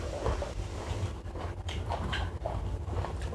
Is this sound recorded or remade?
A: remade